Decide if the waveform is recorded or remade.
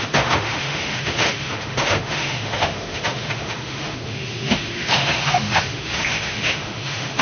remade